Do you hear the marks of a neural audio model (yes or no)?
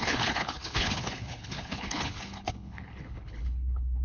yes